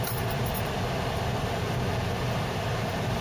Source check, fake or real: real